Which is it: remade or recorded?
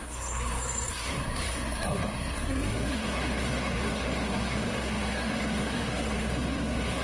remade